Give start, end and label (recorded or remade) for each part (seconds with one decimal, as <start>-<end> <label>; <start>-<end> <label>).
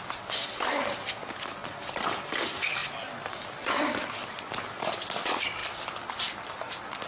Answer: 0.0-7.1 recorded